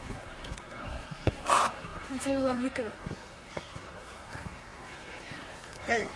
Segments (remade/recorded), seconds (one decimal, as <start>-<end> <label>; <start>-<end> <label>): 0.0-6.2 remade